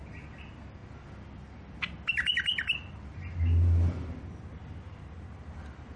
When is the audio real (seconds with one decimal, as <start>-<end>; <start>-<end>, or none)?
0.0-6.0